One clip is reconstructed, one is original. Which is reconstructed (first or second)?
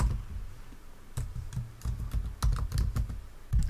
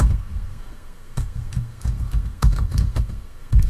second